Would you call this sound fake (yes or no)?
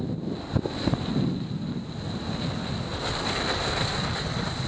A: no